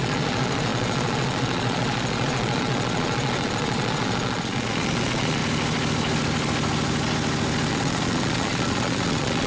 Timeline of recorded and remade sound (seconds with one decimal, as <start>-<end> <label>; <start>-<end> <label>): 0.0-5.4 remade; 5.4-7.7 recorded; 7.7-9.5 remade